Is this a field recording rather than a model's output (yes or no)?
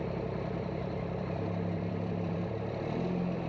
no